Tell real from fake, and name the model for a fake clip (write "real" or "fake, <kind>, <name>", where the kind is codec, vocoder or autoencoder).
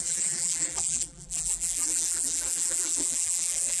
fake, vocoder, BigVGAN v2